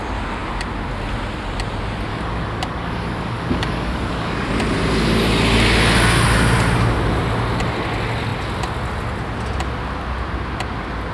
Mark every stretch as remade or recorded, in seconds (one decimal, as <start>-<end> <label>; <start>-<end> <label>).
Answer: 0.0-2.1 recorded; 2.1-4.5 remade; 4.5-11.1 recorded